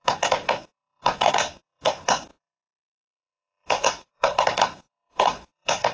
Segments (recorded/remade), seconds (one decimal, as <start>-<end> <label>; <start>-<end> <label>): 0.0-5.9 remade

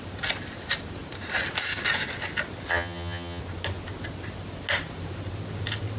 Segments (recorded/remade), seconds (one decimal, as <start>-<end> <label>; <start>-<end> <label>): 0.0-2.7 recorded; 2.7-3.4 remade; 3.4-6.0 recorded

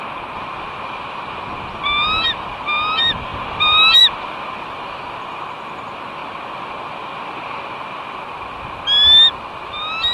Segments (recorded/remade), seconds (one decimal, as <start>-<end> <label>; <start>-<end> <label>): 0.0-10.1 recorded

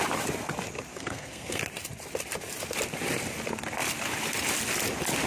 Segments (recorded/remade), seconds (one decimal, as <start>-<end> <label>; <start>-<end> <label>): 0.0-0.9 recorded; 0.9-1.6 remade; 1.6-5.3 recorded

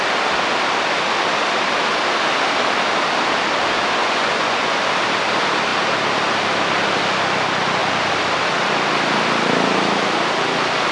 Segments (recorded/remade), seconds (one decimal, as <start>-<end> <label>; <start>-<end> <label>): 0.0-4.0 recorded; 4.0-4.9 remade; 4.9-10.9 recorded

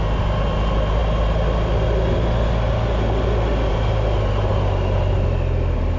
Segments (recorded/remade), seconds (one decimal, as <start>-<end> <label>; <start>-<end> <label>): 0.0-6.0 recorded

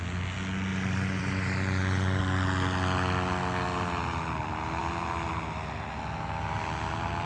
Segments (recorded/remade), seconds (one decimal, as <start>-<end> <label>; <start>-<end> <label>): 0.0-0.7 recorded; 0.7-2.2 remade; 2.2-7.3 recorded